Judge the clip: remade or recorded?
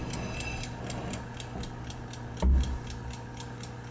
recorded